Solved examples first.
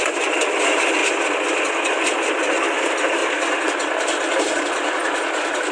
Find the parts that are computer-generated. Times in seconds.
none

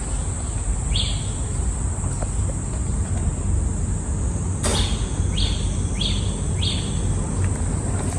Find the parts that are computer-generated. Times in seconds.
none

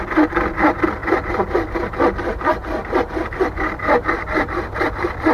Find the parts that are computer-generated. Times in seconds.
none

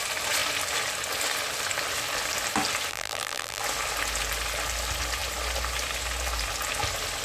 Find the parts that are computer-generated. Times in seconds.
2.9-3.6

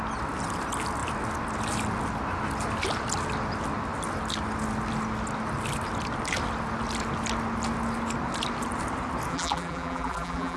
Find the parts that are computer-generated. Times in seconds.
9.3-10.6